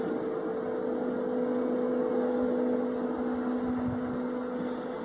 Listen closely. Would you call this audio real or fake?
real